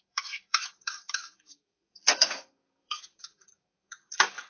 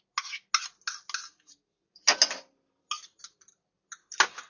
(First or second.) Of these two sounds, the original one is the second